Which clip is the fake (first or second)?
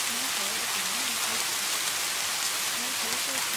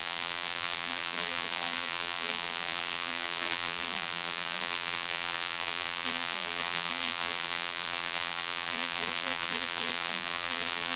second